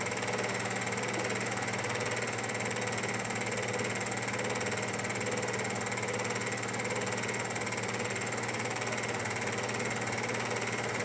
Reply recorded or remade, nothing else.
recorded